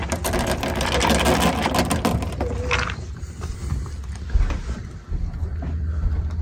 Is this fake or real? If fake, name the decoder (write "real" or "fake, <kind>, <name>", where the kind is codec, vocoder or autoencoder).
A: real